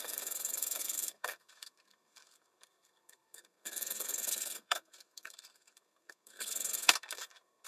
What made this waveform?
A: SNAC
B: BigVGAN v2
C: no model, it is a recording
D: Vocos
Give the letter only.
A